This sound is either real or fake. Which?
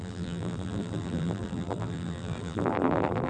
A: fake